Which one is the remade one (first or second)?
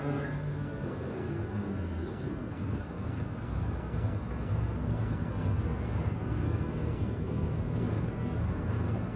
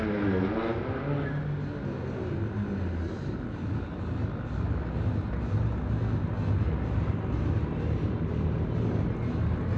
first